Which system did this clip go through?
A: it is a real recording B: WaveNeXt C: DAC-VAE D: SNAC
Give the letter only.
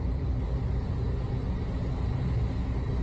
A